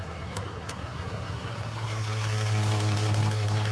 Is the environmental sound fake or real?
fake